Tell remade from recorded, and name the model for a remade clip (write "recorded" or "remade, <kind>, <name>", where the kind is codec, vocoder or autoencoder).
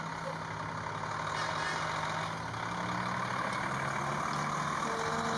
recorded